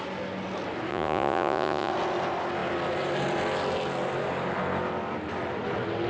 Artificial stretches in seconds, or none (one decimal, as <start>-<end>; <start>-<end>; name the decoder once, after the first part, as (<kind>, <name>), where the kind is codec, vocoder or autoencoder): 0.9-1.9 (vocoder, Vocos)

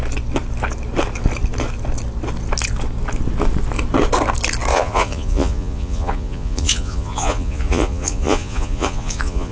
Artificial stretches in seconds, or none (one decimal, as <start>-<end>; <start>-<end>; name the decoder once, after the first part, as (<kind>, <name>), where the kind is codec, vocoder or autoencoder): 4.7-9.5 (vocoder, Vocos)

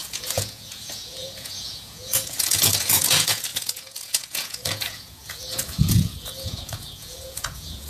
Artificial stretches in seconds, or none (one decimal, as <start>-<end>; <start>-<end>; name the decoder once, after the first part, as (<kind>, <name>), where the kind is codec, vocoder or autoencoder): 0.0-7.9 (vocoder, Vocos)

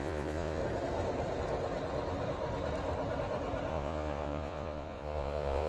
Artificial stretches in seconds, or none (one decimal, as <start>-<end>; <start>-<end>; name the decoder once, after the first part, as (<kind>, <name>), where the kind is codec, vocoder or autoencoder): 0.0-0.6 (vocoder, Vocos); 3.7-5.7

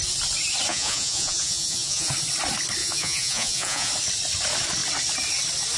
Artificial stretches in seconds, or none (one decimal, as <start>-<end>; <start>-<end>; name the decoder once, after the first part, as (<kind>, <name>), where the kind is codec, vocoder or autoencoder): 0.7-2.1 (vocoder, Vocos); 2.8-3.9